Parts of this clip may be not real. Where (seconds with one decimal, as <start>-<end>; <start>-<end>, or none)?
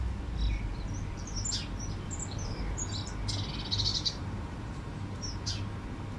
3.9-5.3